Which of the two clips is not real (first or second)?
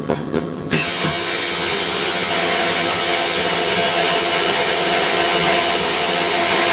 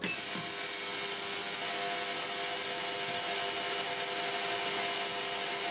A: first